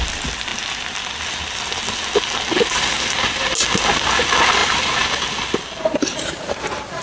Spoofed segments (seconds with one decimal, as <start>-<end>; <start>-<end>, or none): none